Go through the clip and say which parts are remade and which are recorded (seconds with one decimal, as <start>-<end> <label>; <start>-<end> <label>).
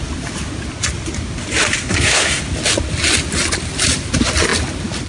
0.0-1.8 recorded; 1.8-2.4 remade; 2.4-5.1 recorded